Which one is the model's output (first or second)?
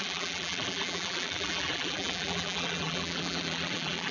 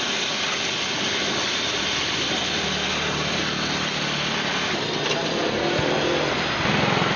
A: first